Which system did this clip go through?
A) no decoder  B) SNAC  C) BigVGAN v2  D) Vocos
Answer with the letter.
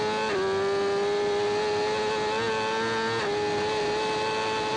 A